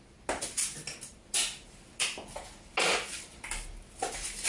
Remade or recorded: recorded